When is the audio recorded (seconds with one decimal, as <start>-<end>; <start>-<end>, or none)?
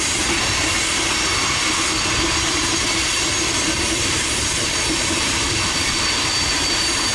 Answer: 0.0-2.5